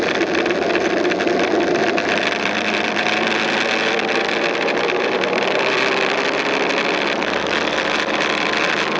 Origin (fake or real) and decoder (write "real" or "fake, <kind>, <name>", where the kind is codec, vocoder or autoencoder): fake, vocoder, BigVGAN v2